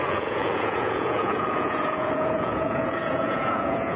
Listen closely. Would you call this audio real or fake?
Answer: fake